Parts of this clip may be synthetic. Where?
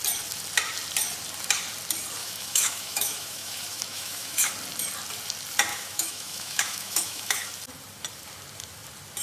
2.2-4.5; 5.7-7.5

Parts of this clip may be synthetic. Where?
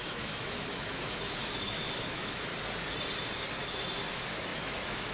0.0-2.5; 4.1-5.1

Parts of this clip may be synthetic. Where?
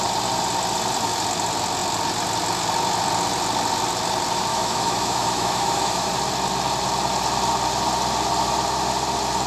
4.5-6.1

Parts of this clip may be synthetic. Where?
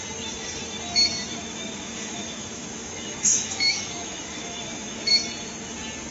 1.4-5.1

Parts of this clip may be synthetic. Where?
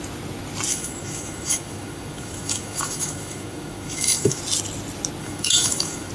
0.7-4.4; 5.2-6.1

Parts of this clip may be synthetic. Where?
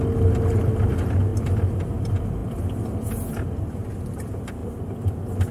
none